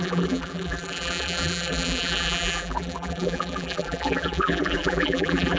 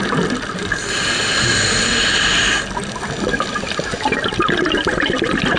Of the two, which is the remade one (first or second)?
first